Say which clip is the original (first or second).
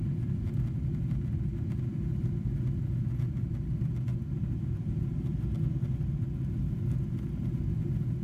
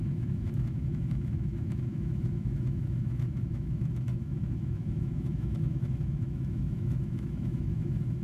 first